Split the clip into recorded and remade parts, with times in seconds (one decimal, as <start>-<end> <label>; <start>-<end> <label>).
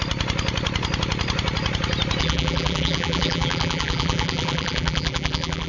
0.0-2.2 recorded; 2.2-5.7 remade